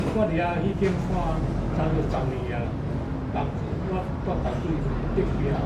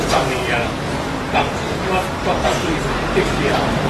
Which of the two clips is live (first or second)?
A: first